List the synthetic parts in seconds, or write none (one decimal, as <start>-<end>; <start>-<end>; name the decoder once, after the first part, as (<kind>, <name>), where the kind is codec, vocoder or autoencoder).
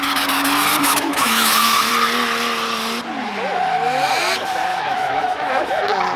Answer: 0.8-1.9 (autoencoder, DAC-VAE); 4.7-5.7